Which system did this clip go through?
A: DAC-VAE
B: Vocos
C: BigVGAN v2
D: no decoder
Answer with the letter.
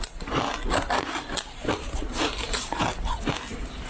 D